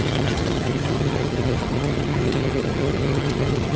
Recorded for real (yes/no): no